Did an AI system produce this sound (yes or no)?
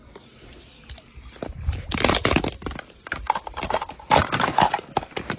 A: no